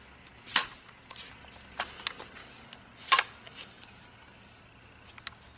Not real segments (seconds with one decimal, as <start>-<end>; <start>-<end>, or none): 2.4-4.6